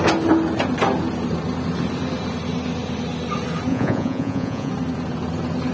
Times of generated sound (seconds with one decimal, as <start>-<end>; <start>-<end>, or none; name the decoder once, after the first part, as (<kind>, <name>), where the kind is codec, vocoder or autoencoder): 3.7-4.7 (vocoder, Vocos)